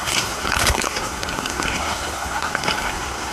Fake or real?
fake